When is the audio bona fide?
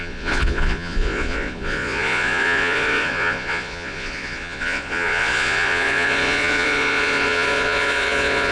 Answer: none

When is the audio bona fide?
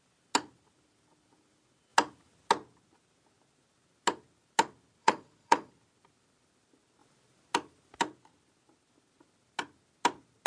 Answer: 0.0-5.0; 5.7-10.5